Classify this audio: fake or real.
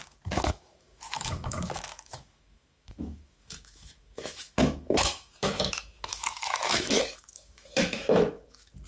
fake